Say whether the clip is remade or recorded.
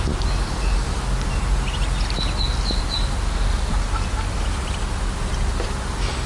recorded